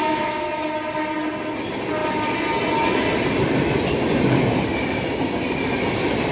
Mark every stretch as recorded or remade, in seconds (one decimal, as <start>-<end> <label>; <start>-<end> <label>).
0.0-6.3 recorded